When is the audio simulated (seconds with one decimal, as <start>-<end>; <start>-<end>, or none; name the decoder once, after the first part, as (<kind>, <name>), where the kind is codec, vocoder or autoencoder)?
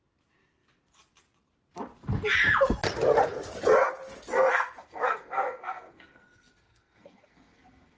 4.3-8.0 (codec, SNAC)